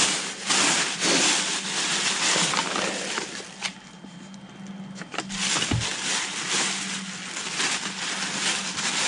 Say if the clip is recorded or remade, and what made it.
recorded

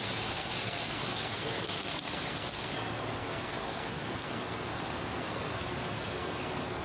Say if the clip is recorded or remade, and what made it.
remade, codec, SNAC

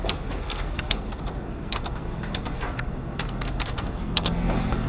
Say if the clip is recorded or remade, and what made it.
remade, codec, SNAC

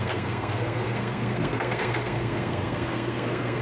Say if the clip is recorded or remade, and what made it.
remade, codec, SNAC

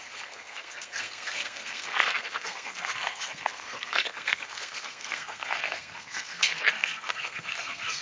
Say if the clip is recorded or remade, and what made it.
remade, codec, SNAC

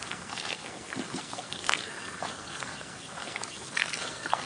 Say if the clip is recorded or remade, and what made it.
remade, codec, SNAC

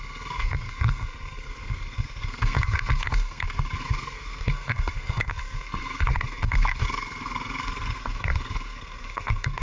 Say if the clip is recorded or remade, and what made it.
remade, codec, SNAC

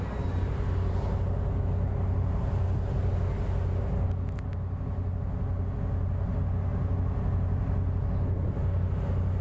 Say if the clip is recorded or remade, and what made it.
recorded